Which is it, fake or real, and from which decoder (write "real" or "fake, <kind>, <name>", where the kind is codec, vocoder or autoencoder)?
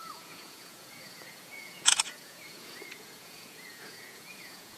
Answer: fake, vocoder, Vocos